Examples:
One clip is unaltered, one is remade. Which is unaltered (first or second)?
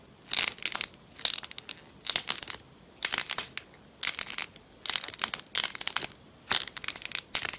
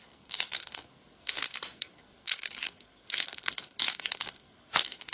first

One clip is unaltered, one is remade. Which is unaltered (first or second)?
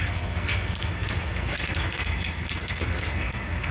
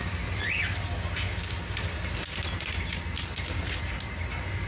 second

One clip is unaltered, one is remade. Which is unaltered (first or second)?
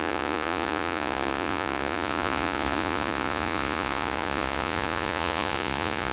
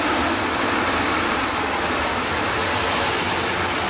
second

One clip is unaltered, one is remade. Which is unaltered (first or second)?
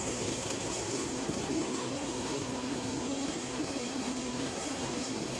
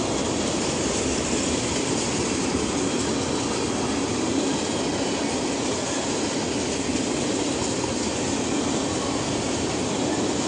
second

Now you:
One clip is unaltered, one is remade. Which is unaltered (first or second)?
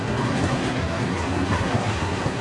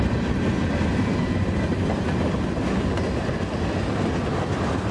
second